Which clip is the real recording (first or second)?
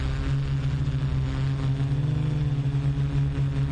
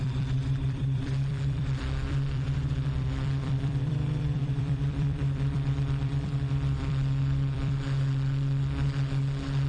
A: first